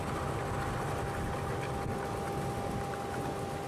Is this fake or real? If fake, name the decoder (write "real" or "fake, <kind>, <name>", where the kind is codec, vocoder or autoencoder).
real